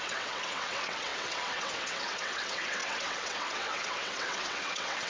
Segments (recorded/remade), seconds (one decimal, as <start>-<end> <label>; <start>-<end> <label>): 0.0-5.1 remade